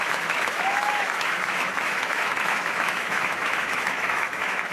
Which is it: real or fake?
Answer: fake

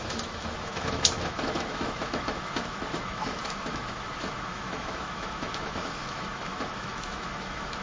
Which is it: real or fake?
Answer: fake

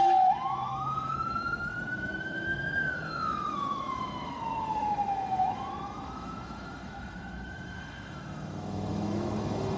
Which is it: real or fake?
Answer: fake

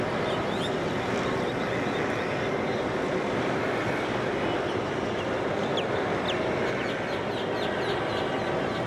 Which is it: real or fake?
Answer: real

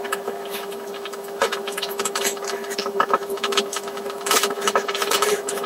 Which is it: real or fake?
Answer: fake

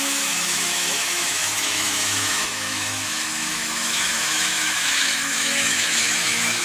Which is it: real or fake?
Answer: fake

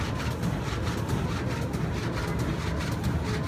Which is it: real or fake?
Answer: real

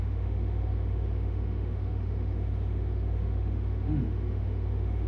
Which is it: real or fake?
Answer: fake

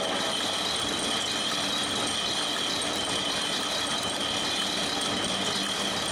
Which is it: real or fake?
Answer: real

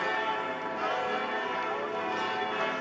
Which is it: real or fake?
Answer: real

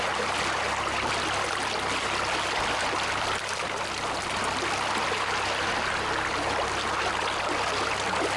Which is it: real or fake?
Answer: real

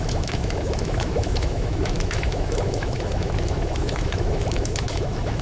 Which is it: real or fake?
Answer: fake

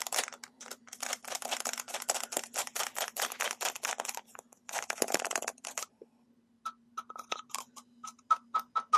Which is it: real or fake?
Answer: real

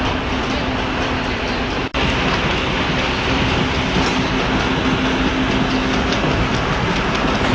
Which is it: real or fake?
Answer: real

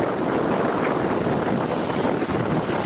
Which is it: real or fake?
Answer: real